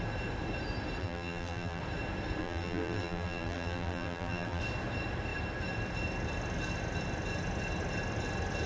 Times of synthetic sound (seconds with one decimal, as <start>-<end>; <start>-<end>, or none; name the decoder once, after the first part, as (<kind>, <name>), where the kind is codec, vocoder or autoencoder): 1.0-1.8 (vocoder, BigVGAN v2); 2.4-4.6